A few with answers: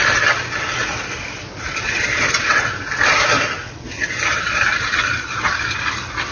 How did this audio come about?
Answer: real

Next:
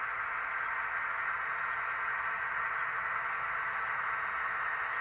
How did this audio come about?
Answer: real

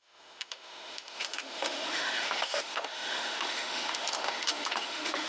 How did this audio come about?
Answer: fake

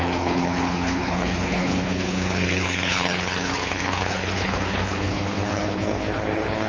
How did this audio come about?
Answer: fake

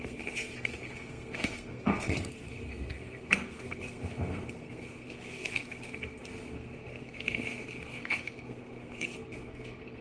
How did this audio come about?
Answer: fake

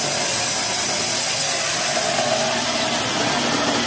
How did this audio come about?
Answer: real